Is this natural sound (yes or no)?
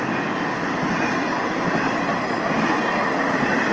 yes